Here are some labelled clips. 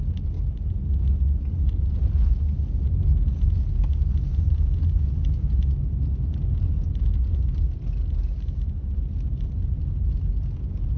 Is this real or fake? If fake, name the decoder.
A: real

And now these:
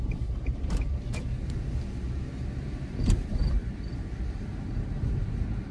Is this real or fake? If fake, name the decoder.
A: fake, vocoder, BigVGAN v2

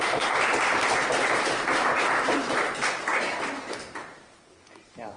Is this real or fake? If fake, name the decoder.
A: fake, vocoder, BigVGAN v2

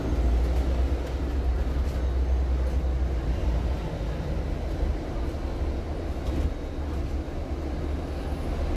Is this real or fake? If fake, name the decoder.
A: real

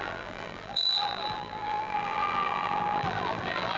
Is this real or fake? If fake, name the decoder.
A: fake, vocoder, BigVGAN v2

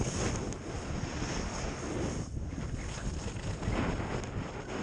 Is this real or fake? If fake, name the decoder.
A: real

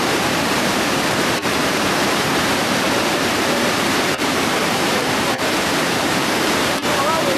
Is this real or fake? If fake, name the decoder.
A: fake, vocoder, BigVGAN v2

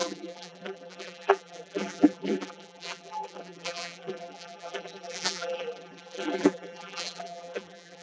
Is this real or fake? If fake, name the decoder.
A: fake, vocoder, BigVGAN v2